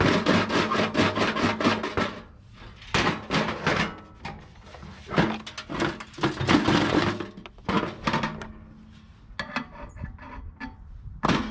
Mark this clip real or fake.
real